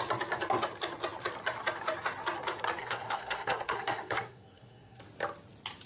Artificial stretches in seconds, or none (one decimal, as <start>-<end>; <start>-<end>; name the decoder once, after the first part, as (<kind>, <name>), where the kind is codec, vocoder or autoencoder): 2.8-5.0 (codec, SNAC)